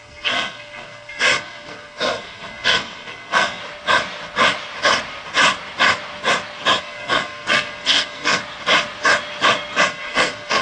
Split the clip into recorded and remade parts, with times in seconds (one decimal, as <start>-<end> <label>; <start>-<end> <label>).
0.0-3.6 remade; 3.6-6.8 recorded; 6.8-8.4 remade; 8.4-9.8 recorded; 9.8-10.6 remade